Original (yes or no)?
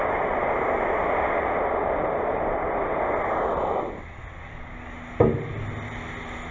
yes